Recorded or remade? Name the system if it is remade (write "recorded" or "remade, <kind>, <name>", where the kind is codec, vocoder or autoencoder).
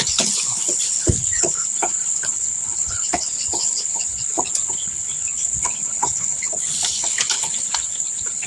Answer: remade, codec, HILCodec